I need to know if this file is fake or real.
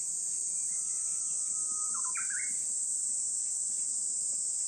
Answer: real